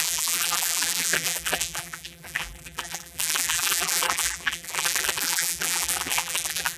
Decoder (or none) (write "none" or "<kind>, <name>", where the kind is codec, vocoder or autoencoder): vocoder, BigVGAN v2